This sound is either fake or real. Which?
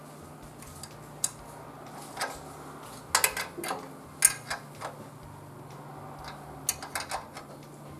real